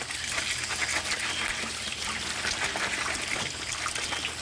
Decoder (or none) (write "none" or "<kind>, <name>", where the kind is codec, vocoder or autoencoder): none